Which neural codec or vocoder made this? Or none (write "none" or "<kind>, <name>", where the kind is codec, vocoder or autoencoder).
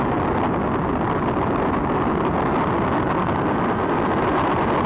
none